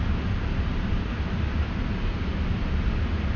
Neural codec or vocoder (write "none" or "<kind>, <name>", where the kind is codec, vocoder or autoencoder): none